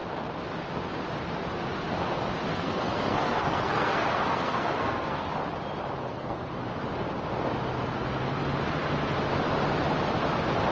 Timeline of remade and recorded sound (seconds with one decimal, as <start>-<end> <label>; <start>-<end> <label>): 0.0-2.5 recorded; 2.5-5.3 remade; 5.3-6.0 recorded; 6.0-6.5 remade; 6.5-10.7 recorded

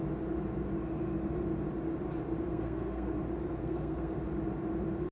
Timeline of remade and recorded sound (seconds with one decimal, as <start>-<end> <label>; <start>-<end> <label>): 0.0-2.5 recorded; 2.5-3.1 remade; 3.1-3.6 recorded; 3.6-4.2 remade; 4.2-5.1 recorded

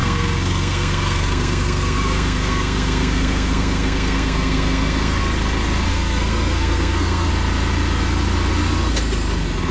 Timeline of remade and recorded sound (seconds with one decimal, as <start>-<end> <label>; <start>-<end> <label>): 0.0-5.2 remade; 5.2-5.9 recorded; 5.9-7.3 remade; 7.3-9.7 recorded

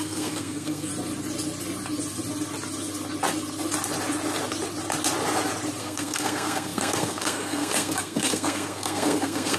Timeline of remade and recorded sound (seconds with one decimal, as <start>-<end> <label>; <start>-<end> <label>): 0.0-0.9 remade; 0.9-5.8 recorded; 5.8-9.6 remade

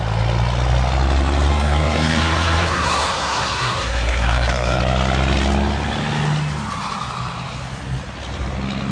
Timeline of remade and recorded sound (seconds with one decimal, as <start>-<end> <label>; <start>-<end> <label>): 0.0-1.5 recorded; 1.5-4.8 remade; 4.8-8.9 recorded

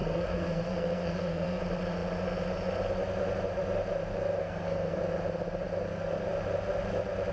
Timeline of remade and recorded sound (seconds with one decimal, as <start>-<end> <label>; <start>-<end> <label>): 0.0-1.6 remade; 1.6-4.4 recorded; 4.4-5.0 remade; 5.0-7.3 recorded